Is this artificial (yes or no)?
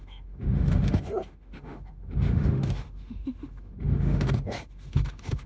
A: yes